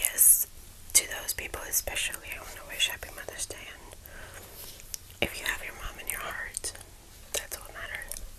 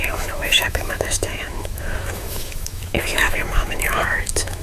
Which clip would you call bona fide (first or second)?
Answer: first